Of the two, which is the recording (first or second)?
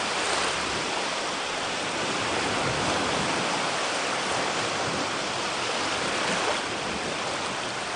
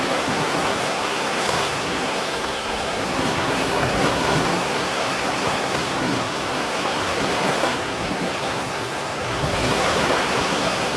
first